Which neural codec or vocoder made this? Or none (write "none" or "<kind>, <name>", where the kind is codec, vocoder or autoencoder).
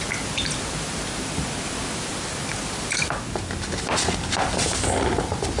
none